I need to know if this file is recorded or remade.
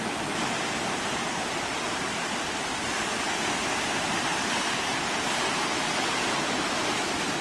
recorded